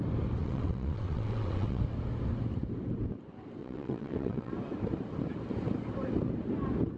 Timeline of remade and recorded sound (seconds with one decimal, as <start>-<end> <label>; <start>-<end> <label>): 0.0-0.4 recorded; 0.4-1.8 remade; 1.8-3.6 recorded; 3.6-4.5 remade; 4.5-7.0 recorded